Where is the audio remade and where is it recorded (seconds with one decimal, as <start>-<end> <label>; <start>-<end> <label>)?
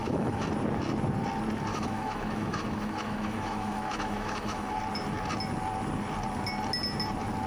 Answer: 0.0-0.5 remade; 0.5-1.7 recorded; 1.7-4.8 remade; 4.8-7.5 recorded